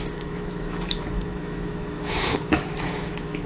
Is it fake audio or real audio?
fake